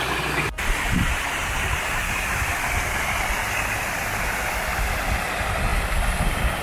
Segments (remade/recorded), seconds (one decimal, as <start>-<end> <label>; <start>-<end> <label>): 0.0-6.6 recorded